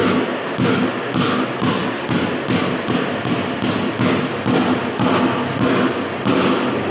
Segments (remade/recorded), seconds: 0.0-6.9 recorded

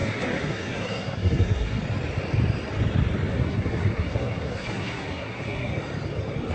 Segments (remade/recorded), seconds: 0.0-1.8 remade; 1.8-3.3 recorded; 3.3-5.7 remade; 5.7-6.5 recorded